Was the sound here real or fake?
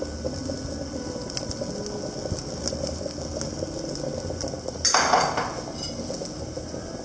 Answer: real